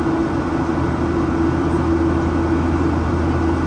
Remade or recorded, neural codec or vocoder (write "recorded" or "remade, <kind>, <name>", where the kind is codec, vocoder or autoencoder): recorded